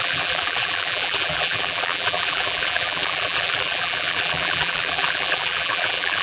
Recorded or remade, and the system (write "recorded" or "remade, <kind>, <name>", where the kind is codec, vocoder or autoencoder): remade, vocoder, BigVGAN v2